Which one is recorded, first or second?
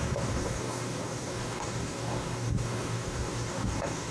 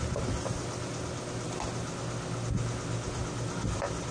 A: second